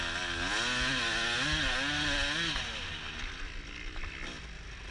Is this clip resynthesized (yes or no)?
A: no